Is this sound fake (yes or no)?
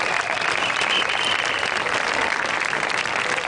no